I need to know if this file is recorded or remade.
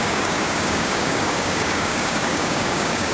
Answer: remade